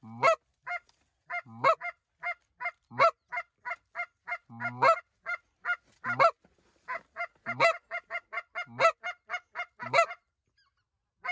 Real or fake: real